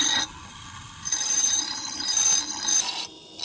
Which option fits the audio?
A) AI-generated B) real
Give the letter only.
B